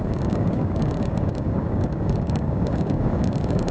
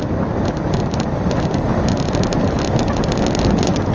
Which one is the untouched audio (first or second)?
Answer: second